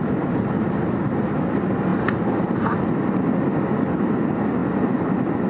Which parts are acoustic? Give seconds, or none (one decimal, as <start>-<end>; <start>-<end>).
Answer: 0.0-5.5